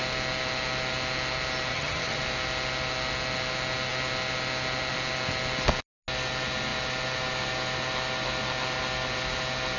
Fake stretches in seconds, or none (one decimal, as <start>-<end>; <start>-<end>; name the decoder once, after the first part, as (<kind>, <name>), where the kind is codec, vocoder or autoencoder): 1.7-2.2 (vocoder, HiFi-GAN)